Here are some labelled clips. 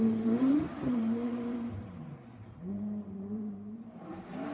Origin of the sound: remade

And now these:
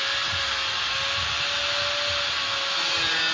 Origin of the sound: recorded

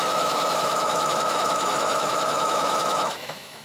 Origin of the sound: remade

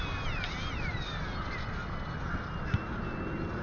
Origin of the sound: recorded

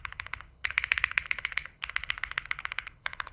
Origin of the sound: remade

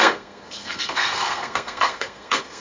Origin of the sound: remade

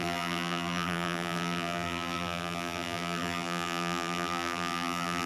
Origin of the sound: remade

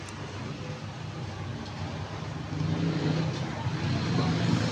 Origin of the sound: recorded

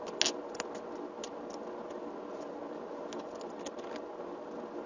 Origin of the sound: recorded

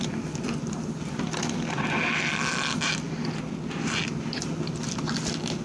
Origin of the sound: recorded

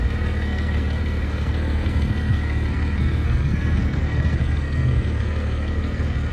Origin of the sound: remade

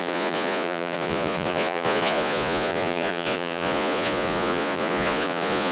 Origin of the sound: remade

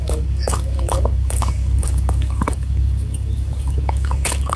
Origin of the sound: remade